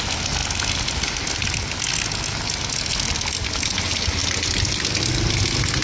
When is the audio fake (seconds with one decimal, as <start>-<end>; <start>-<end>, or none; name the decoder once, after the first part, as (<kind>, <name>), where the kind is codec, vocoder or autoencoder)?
none